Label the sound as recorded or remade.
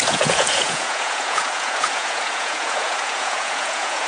remade